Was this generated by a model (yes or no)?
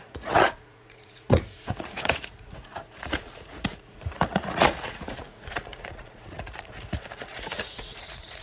yes